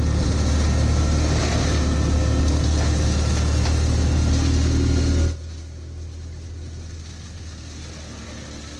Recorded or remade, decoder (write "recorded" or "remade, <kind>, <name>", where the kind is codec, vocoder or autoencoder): recorded